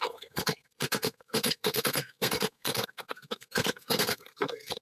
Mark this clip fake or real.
fake